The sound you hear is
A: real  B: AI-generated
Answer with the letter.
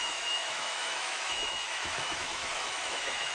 B